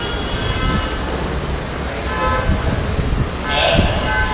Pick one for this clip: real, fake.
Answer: real